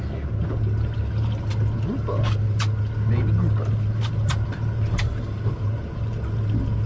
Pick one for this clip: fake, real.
real